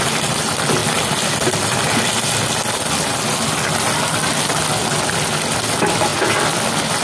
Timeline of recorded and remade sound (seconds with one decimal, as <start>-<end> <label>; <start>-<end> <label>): 0.0-7.0 recorded